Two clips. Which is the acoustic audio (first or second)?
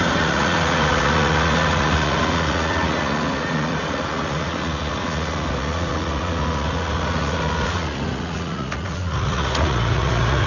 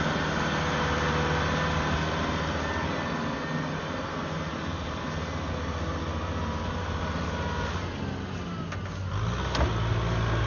second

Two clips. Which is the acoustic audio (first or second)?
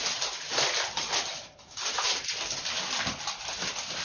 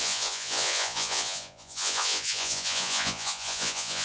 first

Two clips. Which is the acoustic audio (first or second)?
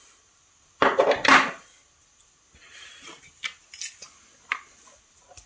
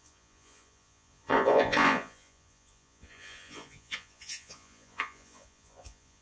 first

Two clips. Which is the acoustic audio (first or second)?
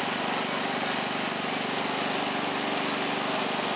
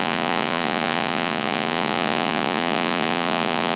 first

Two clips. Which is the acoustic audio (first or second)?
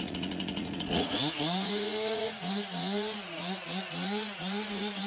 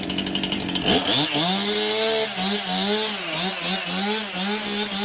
second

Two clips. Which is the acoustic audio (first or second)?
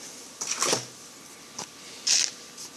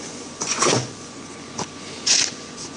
first